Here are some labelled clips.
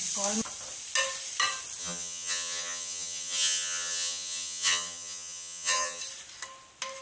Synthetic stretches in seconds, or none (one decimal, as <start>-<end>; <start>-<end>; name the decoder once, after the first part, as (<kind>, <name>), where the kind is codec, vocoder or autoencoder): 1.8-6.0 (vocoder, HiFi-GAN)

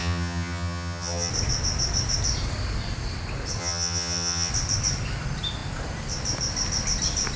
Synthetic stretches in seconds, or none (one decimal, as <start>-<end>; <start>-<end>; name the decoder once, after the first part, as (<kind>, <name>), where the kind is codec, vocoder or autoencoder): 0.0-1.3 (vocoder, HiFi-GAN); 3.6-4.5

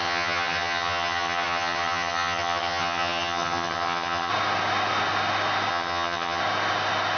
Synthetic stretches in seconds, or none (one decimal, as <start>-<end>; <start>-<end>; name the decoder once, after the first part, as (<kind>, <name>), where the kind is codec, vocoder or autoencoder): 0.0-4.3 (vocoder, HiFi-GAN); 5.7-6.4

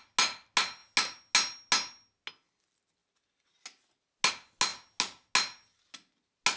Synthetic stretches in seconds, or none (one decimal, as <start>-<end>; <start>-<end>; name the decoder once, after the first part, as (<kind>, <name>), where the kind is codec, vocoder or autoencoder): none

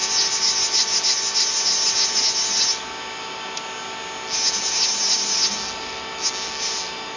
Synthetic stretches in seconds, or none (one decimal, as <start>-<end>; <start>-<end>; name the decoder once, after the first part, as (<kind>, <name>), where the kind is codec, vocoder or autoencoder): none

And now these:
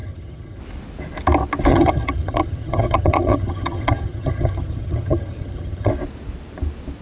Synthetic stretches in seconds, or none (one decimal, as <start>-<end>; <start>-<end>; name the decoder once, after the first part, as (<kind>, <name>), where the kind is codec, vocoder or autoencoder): 0.0-0.6 (vocoder, HiFi-GAN); 1.7-5.9

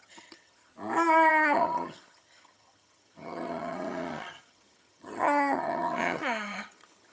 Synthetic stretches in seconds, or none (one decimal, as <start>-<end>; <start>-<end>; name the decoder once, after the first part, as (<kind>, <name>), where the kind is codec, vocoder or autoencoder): 0.0-0.7 (vocoder, HiFi-GAN); 1.3-7.1